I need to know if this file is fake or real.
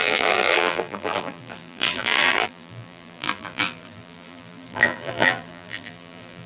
fake